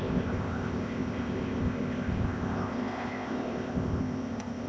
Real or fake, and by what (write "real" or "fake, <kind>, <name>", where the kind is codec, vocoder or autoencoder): fake, codec, ZipCodec